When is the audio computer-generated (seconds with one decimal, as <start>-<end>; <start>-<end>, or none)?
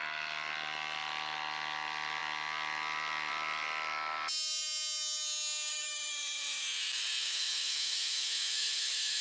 5.7-9.2